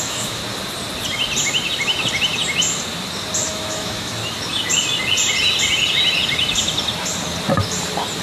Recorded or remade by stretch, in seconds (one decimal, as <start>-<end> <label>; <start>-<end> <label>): 0.0-0.4 remade; 0.4-3.5 recorded; 3.5-4.2 remade; 4.2-8.2 recorded